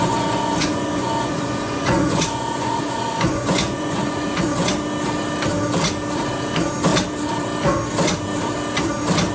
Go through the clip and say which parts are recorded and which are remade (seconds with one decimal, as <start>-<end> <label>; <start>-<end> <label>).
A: 0.0-4.7 remade; 4.7-9.3 recorded